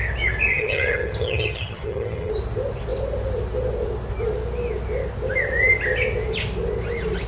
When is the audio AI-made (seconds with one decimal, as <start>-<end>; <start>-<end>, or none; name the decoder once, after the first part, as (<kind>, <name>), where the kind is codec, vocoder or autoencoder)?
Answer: 0.5-2.3 (vocoder, HiFi-GAN)

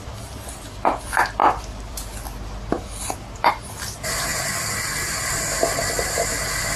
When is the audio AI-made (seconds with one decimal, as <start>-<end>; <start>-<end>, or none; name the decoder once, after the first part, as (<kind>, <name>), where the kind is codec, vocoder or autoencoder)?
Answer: 1.4-3.5 (vocoder, BigVGAN v2); 4.3-6.3